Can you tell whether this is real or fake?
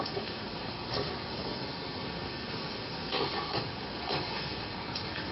fake